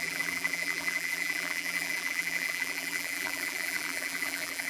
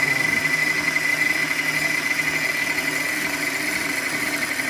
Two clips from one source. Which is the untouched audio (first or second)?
second